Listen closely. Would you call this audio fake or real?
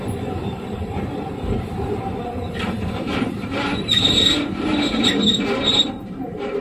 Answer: fake